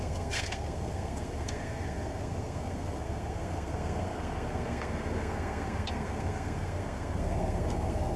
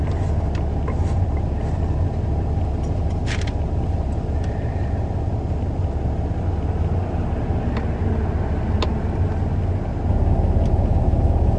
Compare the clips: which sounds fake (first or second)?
first